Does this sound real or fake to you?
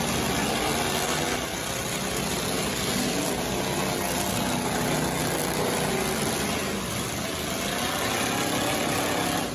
real